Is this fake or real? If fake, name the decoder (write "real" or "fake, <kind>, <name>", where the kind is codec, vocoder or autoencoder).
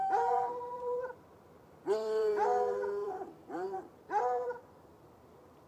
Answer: fake, vocoder, BigVGAN v2